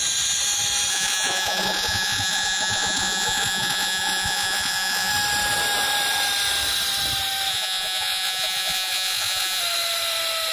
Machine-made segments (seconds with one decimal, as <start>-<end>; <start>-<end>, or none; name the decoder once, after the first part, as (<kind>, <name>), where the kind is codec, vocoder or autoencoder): 0.9-5.1 (vocoder, Vocos); 7.5-9.6